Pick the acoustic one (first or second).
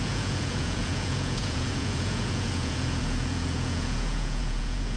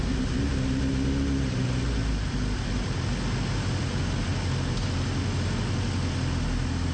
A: second